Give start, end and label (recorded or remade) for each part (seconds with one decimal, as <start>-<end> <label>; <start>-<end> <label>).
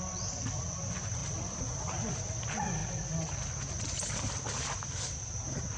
0.0-5.8 recorded